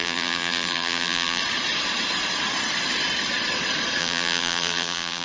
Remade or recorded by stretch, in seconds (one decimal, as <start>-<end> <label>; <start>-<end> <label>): 0.0-1.4 remade; 1.4-4.0 recorded; 4.0-5.2 remade